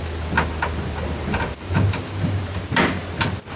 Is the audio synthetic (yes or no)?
no